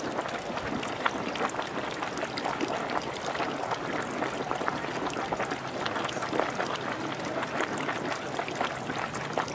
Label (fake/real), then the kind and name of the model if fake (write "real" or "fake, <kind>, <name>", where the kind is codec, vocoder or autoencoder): real